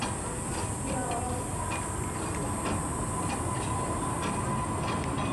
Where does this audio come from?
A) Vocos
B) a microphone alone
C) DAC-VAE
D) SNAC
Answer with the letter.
B